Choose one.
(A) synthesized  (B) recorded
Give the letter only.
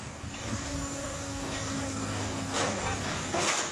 A